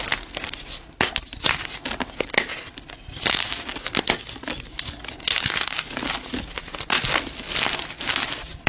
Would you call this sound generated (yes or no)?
no